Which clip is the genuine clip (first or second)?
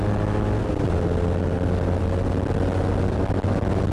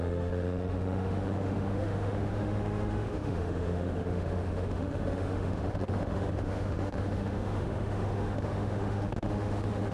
first